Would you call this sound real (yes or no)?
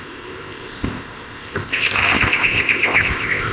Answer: no